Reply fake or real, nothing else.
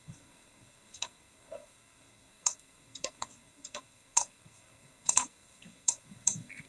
fake